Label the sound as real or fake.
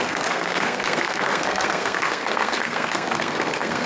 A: fake